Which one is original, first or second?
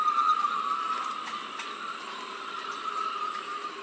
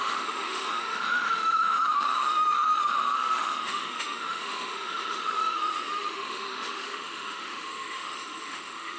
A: first